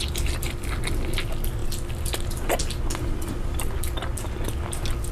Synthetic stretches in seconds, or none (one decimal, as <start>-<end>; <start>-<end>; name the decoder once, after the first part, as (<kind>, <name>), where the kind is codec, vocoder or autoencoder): none